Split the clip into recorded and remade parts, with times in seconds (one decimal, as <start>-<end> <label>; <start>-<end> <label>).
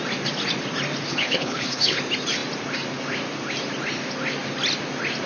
0.0-1.1 recorded; 1.1-2.0 remade; 2.0-5.3 recorded